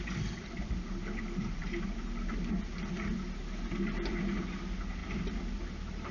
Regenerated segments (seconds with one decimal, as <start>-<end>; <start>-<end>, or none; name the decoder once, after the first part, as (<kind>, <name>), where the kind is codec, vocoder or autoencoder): none